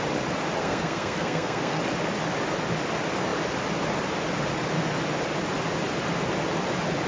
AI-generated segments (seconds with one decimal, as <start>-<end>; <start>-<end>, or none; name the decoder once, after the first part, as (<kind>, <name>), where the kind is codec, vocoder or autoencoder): 0.6-1.8 (codec, SNAC)